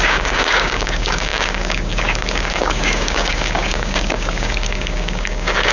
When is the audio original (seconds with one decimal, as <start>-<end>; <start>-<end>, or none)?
none